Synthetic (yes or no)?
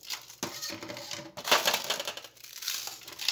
no